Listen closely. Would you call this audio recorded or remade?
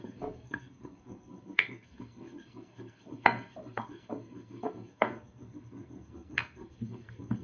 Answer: remade